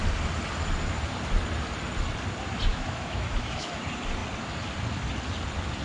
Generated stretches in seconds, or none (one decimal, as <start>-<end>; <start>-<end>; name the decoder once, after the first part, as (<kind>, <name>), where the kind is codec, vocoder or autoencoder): 2.7-3.8 (autoencoder, DAC-VAE)